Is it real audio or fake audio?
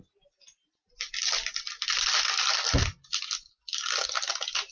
real